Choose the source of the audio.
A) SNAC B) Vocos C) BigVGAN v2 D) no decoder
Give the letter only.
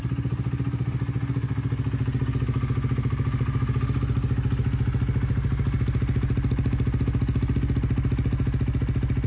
D